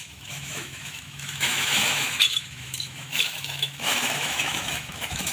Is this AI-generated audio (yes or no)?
yes